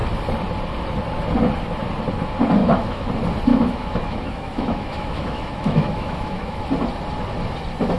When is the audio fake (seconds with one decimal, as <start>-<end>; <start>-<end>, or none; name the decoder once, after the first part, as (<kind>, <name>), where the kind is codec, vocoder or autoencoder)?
2.6-3.1 (autoencoder, DAC-VAE); 3.5-6.6